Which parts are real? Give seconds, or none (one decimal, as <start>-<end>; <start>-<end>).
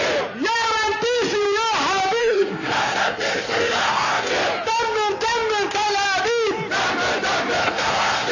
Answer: 0.0-2.2; 4.3-7.6